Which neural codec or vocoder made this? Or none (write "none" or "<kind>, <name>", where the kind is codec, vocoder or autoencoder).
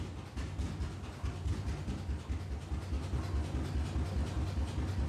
none